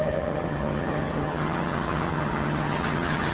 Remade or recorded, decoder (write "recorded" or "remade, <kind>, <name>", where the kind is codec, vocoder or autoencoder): remade, vocoder, HiFi-GAN